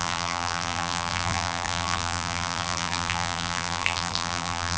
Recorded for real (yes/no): no